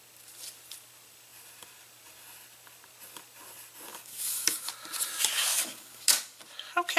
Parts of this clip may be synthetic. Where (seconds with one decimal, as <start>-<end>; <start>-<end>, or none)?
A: 3.9-4.7; 5.5-6.4